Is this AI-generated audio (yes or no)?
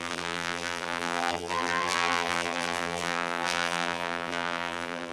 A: yes